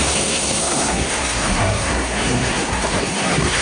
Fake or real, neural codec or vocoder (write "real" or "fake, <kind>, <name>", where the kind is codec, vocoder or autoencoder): fake, codec, SNAC